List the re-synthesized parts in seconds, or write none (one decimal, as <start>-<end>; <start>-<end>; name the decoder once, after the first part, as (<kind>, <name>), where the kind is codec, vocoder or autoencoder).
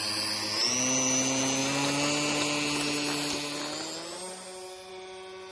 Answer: none